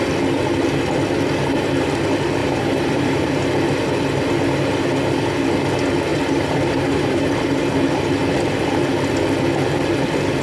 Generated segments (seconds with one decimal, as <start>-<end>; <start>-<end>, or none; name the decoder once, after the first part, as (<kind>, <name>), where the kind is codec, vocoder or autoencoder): 2.4-3.4 (vocoder, BigVGAN v2); 6.1-7.6